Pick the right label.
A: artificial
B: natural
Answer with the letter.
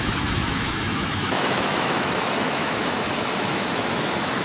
A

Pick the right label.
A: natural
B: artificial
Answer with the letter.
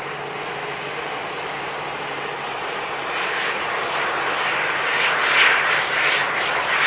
A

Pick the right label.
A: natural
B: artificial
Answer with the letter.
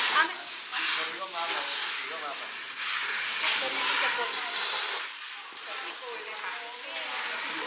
A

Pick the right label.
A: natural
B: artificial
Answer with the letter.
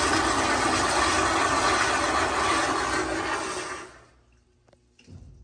A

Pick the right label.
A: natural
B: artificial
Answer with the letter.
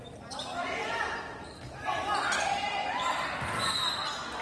A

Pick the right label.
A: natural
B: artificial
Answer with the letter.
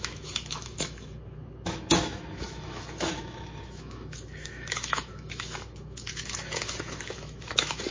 B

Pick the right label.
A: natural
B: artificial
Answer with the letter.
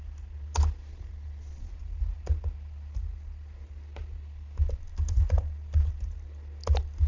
A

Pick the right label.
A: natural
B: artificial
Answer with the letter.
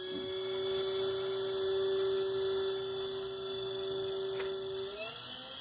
A